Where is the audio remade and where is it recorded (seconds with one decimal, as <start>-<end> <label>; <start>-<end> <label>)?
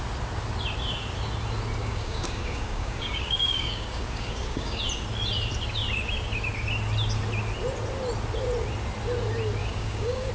0.0-1.8 recorded; 1.8-4.8 remade; 4.8-9.6 recorded; 9.6-10.3 remade